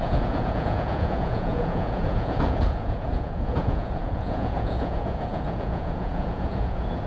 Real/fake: fake